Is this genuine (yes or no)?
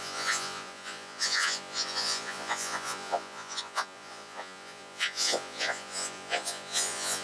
no